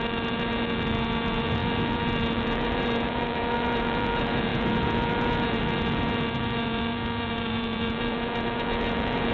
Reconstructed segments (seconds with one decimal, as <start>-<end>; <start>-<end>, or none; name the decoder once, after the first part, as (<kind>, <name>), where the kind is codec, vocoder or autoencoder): 0.0-9.3 (vocoder, Vocos)